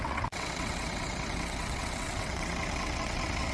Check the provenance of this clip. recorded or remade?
remade